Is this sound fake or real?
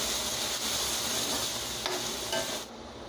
real